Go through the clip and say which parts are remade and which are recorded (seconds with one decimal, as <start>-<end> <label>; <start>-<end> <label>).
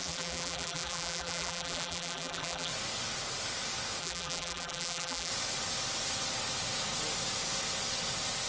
0.0-2.7 remade; 2.7-4.0 recorded; 4.0-5.3 remade; 5.3-8.5 recorded